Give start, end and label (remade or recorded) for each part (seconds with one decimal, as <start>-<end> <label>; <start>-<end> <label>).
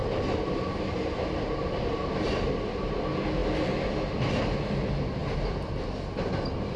0.0-6.8 recorded